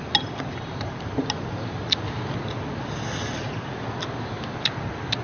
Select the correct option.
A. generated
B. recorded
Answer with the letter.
B